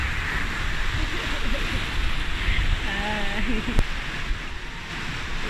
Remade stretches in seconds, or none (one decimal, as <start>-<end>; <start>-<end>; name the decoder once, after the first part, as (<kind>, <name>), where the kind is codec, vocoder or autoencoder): 4.3-4.9 (vocoder, BigVGAN v2)